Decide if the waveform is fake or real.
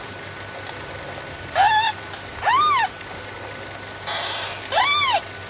real